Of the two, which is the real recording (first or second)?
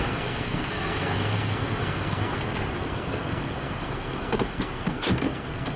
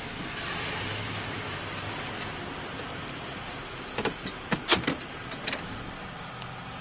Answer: second